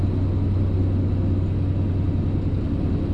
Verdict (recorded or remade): recorded